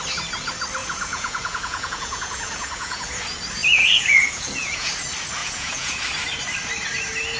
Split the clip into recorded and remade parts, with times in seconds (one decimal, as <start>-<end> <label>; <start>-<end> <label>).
0.0-0.8 recorded; 0.8-3.1 remade; 3.1-3.6 recorded; 3.6-4.9 remade; 4.9-5.4 recorded; 5.4-6.0 remade; 6.0-7.4 recorded